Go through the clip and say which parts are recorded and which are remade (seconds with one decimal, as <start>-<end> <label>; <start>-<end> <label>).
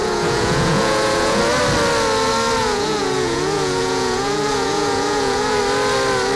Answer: 0.0-1.4 remade; 1.4-2.6 recorded; 2.6-5.6 remade; 5.6-6.4 recorded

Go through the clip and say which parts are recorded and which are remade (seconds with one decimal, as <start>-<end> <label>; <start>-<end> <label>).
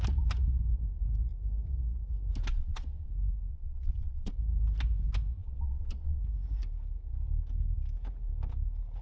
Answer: 0.0-2.5 recorded; 2.5-3.1 remade; 3.1-3.5 recorded; 3.5-4.3 remade; 4.3-5.4 recorded; 5.4-6.2 remade; 6.2-9.0 recorded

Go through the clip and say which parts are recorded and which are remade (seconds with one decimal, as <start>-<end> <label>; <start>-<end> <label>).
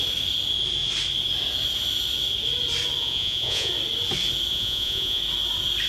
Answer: 0.0-3.0 recorded; 3.0-3.7 remade; 3.7-4.5 recorded; 4.5-5.2 remade; 5.2-5.9 recorded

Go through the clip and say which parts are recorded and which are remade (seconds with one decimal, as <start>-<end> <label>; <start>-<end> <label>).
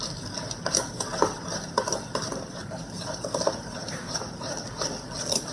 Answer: 0.0-1.1 recorded; 1.1-4.4 remade; 4.4-5.5 recorded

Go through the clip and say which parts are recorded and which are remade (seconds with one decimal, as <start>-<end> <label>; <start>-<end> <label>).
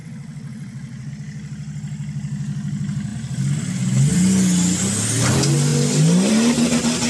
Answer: 0.0-1.1 remade; 1.1-7.1 recorded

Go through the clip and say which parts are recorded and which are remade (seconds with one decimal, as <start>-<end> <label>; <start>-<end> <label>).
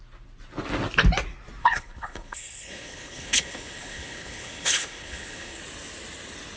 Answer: 0.0-1.6 recorded; 1.6-5.6 remade; 5.6-6.6 recorded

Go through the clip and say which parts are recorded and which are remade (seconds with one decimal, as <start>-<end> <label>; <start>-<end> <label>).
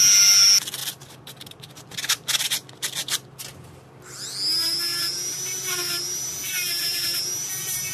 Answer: 0.0-0.8 recorded; 0.8-2.7 remade; 2.7-7.9 recorded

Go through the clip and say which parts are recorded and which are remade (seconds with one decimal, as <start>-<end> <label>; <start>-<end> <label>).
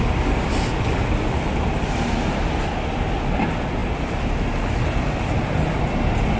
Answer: 0.0-6.4 recorded